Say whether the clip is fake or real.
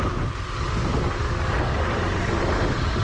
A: real